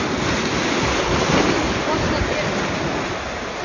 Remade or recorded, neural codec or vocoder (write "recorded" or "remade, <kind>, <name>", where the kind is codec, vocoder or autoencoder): recorded